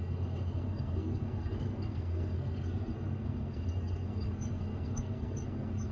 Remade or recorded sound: remade